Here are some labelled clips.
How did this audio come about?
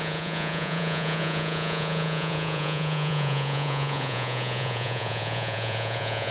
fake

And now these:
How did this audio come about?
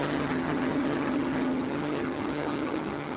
fake